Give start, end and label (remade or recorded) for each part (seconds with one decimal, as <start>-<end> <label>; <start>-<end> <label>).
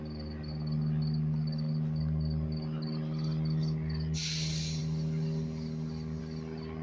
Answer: 0.0-6.8 recorded